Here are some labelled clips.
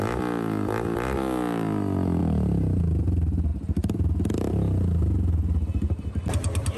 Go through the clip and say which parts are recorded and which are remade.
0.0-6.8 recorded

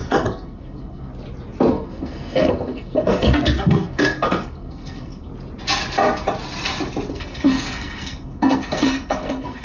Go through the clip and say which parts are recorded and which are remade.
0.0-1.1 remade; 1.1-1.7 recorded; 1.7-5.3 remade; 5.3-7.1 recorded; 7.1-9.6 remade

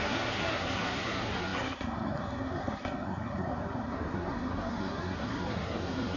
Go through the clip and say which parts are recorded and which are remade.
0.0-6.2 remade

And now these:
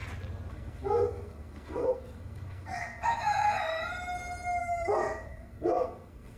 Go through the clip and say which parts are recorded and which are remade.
0.0-0.5 recorded; 0.5-3.8 remade; 3.8-4.6 recorded; 4.6-6.4 remade